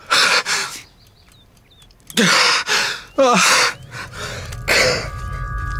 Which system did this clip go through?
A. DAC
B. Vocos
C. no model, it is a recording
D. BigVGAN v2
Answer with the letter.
C